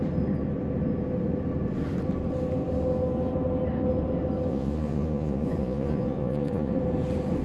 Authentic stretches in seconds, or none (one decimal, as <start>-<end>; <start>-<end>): 0.0-4.5; 6.8-7.4